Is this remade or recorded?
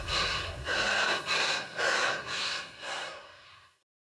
remade